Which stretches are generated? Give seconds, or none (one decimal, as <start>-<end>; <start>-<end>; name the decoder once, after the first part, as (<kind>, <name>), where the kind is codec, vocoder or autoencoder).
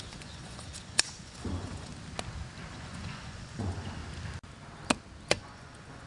0.0-1.9 (vocoder, Vocos); 2.7-4.0; 5.3-6.1